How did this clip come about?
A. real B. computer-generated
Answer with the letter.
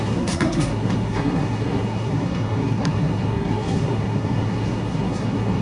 B